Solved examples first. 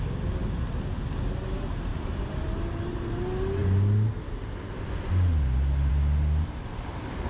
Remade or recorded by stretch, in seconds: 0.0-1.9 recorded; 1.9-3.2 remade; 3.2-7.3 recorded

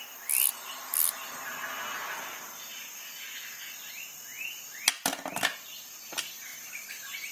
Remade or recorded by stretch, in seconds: 0.0-7.3 recorded

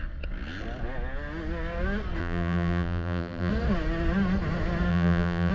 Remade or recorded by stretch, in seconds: 0.0-2.2 recorded; 2.2-3.5 remade; 3.5-4.9 recorded; 4.9-5.5 remade